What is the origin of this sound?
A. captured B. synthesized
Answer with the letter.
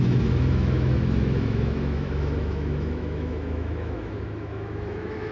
B